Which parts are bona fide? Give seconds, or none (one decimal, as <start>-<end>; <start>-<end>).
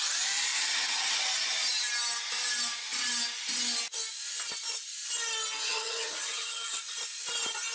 0.0-0.5; 1.2-5.6; 6.8-7.7